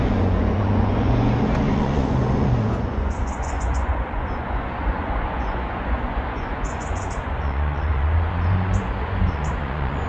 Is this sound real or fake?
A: fake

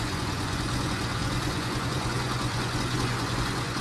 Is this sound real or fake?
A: fake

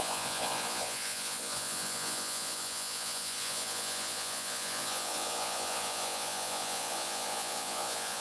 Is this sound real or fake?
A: fake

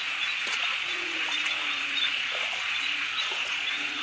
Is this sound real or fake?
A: fake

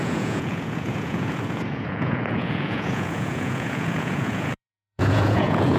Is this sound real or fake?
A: fake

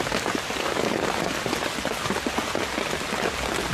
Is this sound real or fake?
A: real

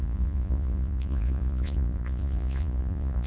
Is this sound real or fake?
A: fake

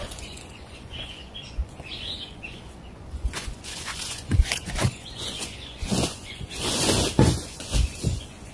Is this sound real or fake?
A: fake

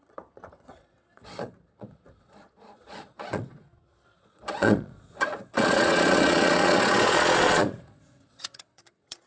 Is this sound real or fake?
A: fake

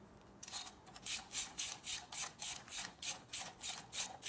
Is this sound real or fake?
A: fake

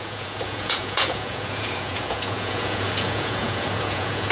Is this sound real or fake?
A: fake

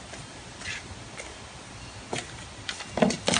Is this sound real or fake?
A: real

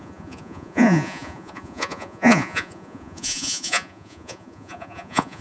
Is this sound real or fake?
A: fake